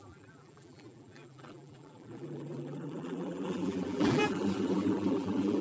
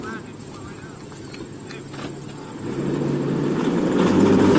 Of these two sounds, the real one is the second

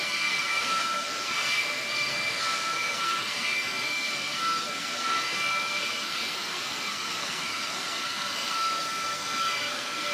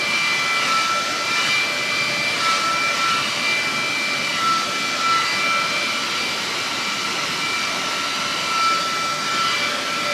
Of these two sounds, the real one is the second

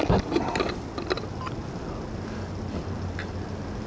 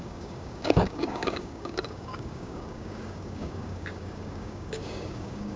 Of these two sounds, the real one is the first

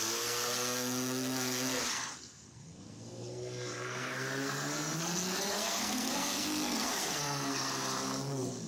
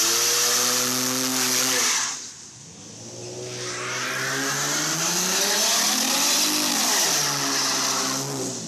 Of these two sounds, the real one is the second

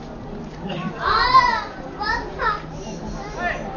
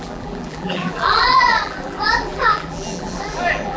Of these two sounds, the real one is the first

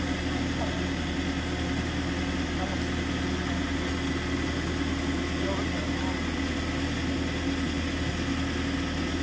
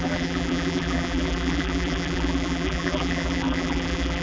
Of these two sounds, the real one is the first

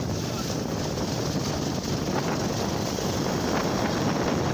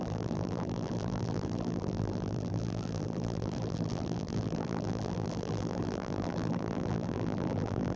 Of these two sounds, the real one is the first